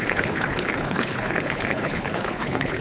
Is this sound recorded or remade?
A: remade